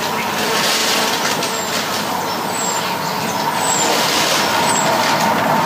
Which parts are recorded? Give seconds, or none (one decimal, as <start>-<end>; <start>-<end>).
0.0-5.7